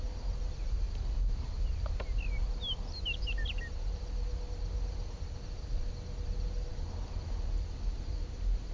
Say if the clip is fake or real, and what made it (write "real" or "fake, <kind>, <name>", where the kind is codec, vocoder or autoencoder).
real